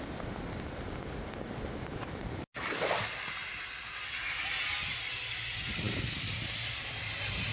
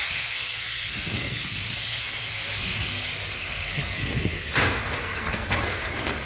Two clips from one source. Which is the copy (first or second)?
second